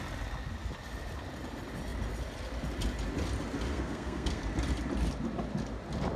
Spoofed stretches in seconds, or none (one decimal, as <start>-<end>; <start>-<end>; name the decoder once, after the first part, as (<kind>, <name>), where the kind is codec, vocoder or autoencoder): 3.7-4.4 (codec, SNAC)